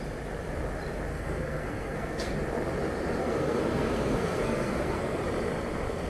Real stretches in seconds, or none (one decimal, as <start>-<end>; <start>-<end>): 0.0-1.1; 2.3-3.2; 5.2-6.1